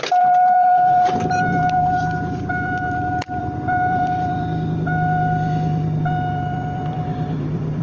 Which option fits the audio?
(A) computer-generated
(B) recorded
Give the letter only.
A